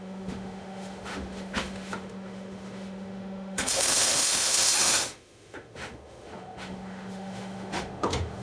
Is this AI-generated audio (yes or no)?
yes